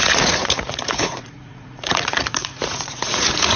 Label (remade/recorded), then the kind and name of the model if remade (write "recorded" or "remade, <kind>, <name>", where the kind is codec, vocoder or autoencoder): remade, vocoder, Vocos